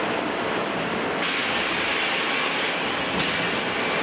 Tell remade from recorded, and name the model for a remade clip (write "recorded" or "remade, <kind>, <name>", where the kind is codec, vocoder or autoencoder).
recorded